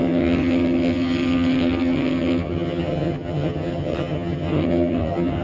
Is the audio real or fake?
fake